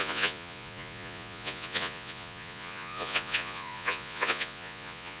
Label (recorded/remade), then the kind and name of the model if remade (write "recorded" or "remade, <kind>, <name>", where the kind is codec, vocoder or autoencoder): remade, vocoder, Vocos